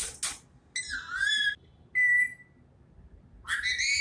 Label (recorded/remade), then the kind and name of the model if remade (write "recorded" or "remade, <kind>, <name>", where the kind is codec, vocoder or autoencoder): recorded